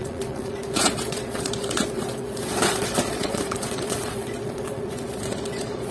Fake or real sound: fake